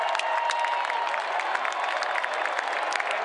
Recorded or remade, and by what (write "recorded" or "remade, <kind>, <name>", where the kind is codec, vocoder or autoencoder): recorded